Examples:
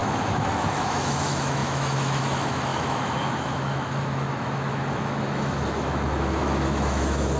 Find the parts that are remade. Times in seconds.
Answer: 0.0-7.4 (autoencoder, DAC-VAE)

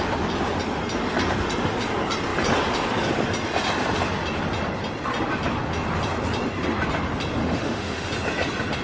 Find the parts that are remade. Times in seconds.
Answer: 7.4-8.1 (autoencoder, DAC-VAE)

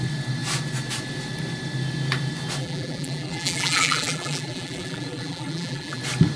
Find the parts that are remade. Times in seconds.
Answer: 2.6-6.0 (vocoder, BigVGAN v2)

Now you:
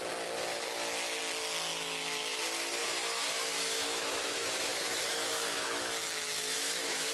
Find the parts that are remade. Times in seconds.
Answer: 0.5-1.2 (autoencoder, DAC-VAE); 1.7-2.4; 2.8-7.1

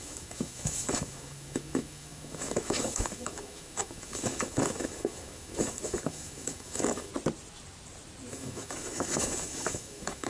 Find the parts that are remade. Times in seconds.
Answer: 0.0-7.1 (autoencoder, DAC-VAE); 8.3-10.3

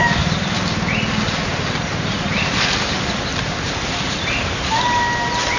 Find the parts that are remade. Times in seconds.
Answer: 3.3-4.6 (vocoder, BigVGAN v2)